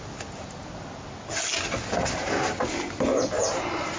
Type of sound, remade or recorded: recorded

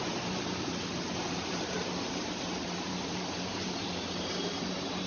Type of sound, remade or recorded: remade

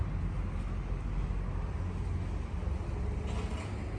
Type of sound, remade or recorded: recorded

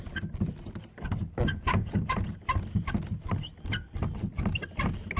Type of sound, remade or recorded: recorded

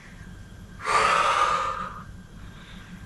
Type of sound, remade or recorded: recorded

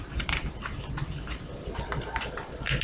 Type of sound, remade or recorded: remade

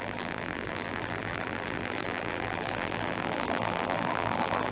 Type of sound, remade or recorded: remade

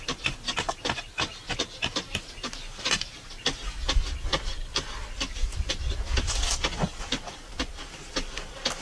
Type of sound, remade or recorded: recorded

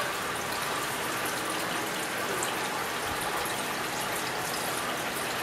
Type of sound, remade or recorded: recorded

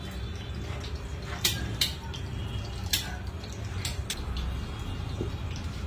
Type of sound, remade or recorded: recorded